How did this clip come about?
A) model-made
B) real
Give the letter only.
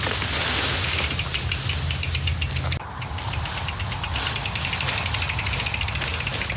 B